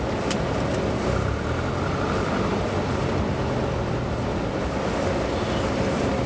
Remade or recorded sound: recorded